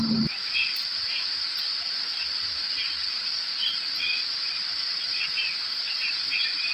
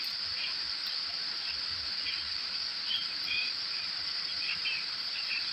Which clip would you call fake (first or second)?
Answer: second